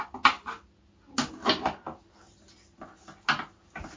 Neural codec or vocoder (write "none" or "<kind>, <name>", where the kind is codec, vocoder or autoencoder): none